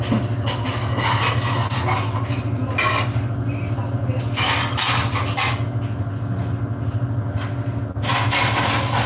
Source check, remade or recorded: recorded